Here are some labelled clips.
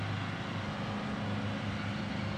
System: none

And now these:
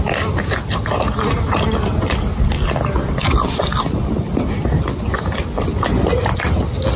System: none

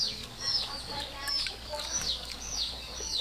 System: codec, DAC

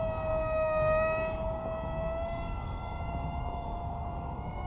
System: codec, DAC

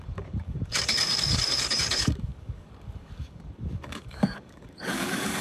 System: codec, DAC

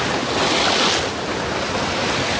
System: none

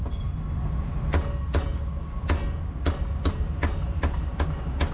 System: none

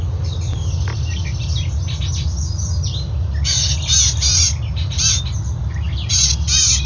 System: none